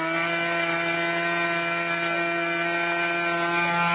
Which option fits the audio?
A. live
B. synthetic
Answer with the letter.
A